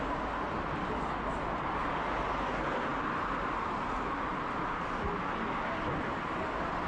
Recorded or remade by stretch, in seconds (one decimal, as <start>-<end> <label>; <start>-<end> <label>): 0.0-6.9 recorded